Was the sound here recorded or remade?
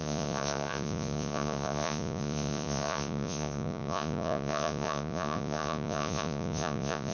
remade